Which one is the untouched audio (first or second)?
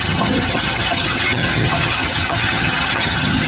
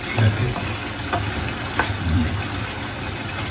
second